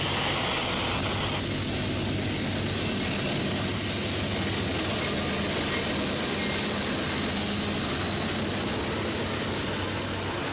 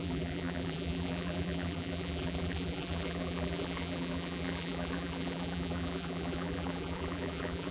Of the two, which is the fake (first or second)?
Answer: second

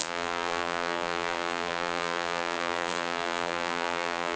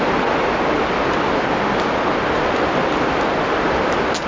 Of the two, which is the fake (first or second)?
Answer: first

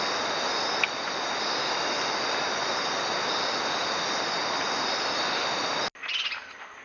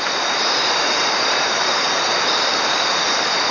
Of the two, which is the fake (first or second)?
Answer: second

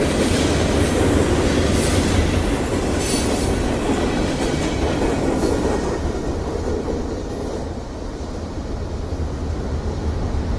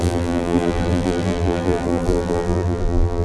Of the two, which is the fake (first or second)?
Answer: second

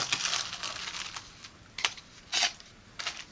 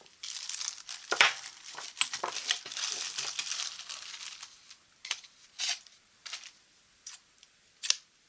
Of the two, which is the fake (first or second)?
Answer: second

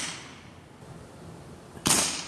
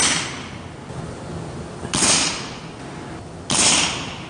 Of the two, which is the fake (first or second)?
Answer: first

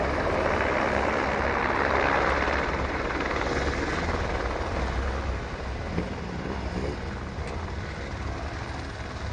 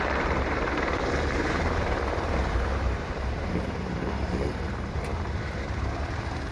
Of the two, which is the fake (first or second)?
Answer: second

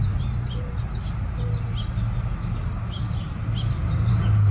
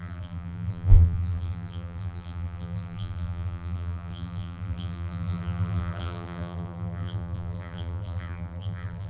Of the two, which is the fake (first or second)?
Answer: second